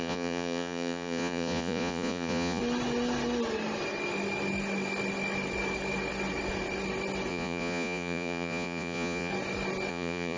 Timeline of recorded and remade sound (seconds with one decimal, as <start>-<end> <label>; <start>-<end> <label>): 0.0-2.6 remade; 2.6-7.3 recorded; 7.3-9.3 remade; 9.3-9.9 recorded; 9.9-10.4 remade